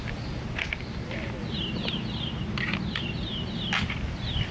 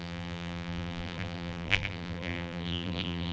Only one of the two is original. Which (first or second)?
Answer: first